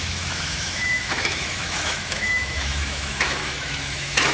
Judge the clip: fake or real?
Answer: fake